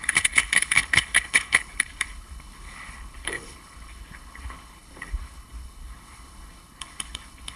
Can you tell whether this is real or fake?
fake